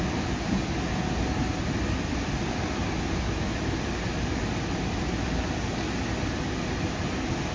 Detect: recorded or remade recorded